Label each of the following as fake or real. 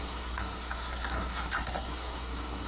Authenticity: fake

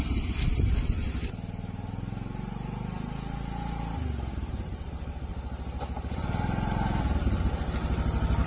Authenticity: real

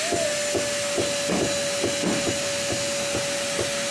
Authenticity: real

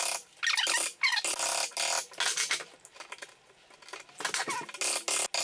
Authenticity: real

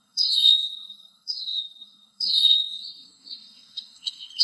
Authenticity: fake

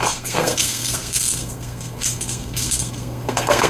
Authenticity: fake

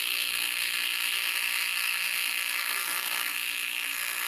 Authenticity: fake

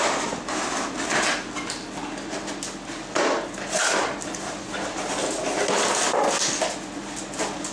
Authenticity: real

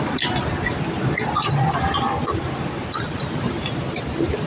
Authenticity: real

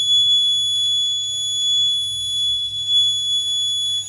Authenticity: real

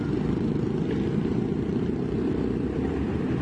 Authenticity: real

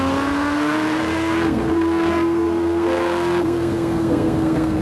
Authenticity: fake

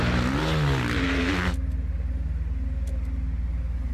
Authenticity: real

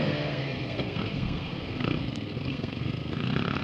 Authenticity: fake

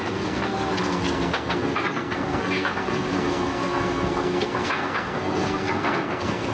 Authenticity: fake